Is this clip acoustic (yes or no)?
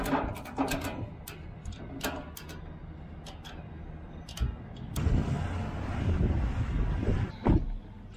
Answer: yes